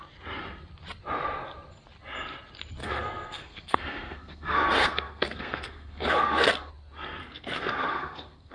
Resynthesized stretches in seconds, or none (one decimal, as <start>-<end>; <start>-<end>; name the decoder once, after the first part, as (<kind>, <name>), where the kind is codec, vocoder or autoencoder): 2.8-6.7 (codec, SNAC); 7.2-8.5